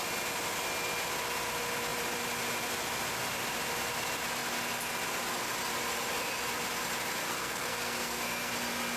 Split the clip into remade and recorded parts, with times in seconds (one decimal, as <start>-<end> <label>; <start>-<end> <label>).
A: 0.0-7.2 recorded; 7.2-8.5 remade; 8.5-9.0 recorded